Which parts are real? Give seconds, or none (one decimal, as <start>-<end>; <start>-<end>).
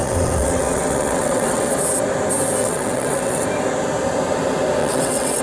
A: 1.7-2.6; 3.4-4.8